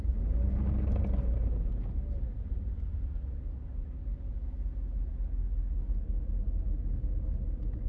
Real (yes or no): yes